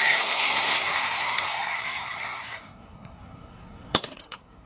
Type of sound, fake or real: fake